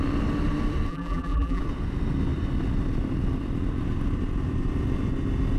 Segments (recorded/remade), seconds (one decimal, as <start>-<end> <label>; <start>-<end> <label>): 0.0-0.9 recorded; 0.9-1.6 remade; 1.6-5.6 recorded